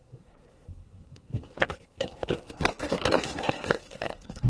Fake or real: fake